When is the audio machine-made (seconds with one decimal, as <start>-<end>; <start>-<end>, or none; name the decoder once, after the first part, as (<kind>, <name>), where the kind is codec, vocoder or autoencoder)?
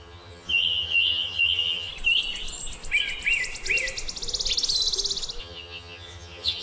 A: 0.0-1.9 (vocoder, HiFi-GAN); 5.4-6.6